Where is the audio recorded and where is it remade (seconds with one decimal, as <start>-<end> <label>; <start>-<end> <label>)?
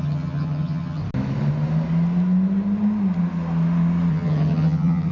0.0-1.0 remade; 1.0-4.1 recorded; 4.1-5.1 remade